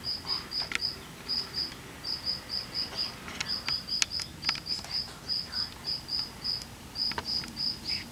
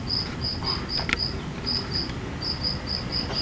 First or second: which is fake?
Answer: second